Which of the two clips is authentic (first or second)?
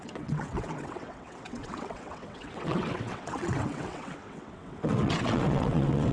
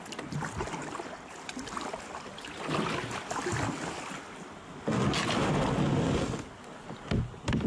second